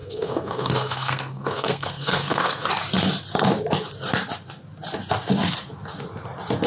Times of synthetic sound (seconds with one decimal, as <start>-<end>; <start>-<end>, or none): 0.0-2.7